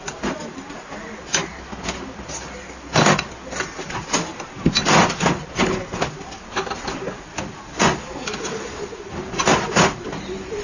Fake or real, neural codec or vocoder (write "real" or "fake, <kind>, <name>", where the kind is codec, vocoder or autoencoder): real